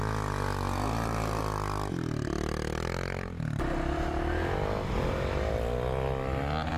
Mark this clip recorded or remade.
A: recorded